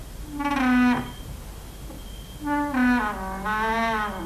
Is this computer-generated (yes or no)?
no